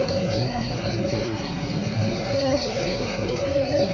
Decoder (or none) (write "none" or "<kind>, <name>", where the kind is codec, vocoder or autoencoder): codec, SNAC